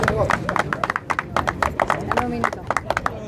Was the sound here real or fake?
real